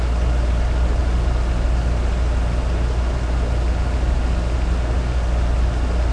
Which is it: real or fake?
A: real